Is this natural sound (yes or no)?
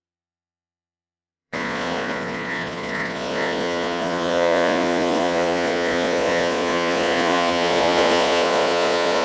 no